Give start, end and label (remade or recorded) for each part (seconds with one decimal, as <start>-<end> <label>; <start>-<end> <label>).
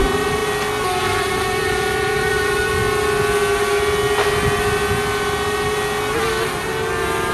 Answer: 0.0-0.4 remade; 0.4-1.0 recorded; 1.0-2.8 remade; 2.8-7.3 recorded